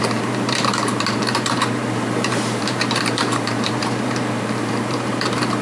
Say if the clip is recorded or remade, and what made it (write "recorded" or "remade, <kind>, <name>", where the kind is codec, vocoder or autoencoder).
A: remade, vocoder, BigVGAN v2